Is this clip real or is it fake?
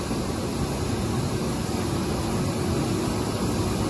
real